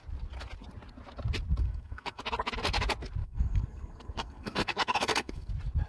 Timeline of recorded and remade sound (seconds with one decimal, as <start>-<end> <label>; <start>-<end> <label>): 0.0-1.6 recorded; 1.6-2.2 remade; 2.2-3.2 recorded; 3.2-5.5 remade; 5.5-5.9 recorded